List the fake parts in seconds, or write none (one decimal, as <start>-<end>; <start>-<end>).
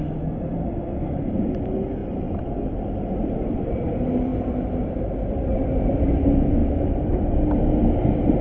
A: none